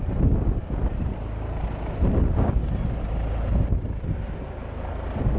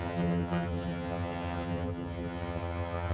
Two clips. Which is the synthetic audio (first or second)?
second